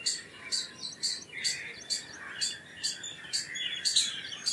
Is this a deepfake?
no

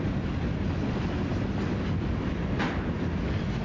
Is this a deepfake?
no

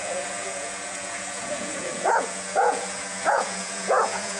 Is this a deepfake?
yes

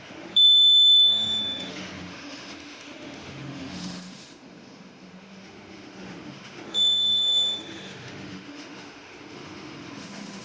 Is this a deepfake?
yes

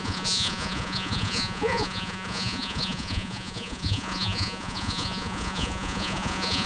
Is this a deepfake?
yes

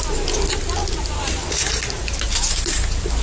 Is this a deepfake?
no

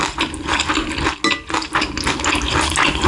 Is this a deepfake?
no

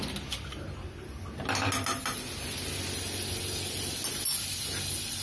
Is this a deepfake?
no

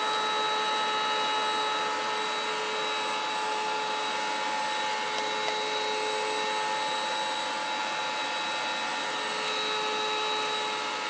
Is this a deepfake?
no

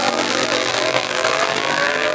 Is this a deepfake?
yes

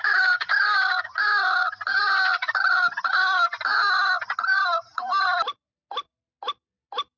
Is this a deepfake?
no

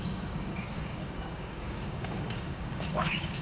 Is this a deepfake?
yes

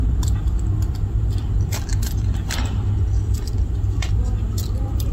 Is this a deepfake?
yes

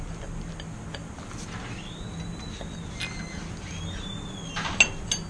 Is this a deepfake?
no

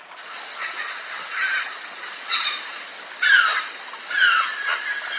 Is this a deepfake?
no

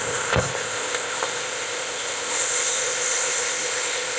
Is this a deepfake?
yes